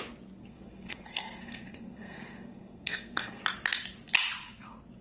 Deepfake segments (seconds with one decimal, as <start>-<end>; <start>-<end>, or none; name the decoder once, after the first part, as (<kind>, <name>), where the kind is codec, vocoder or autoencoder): 0.4-3.4 (codec, SNAC)